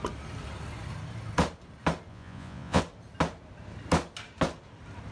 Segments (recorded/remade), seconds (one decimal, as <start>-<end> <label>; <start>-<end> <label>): 0.0-2.1 recorded; 2.1-2.8 remade; 2.8-5.1 recorded